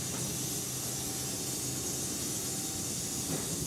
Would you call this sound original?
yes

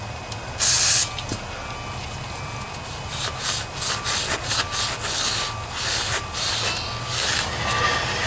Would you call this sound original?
yes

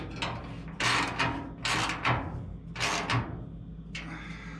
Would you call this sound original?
yes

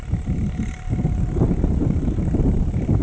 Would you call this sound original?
no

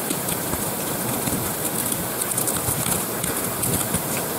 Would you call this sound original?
yes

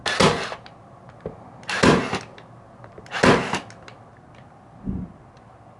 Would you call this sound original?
yes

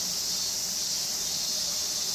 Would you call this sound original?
yes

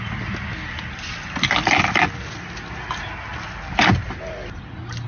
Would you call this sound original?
yes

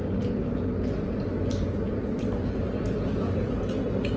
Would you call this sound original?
yes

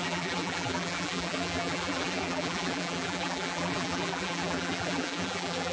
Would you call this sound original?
no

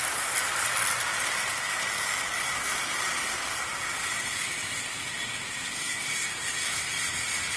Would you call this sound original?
yes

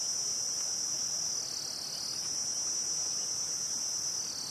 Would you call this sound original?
yes